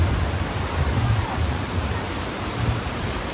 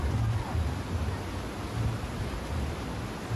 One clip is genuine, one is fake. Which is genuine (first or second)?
second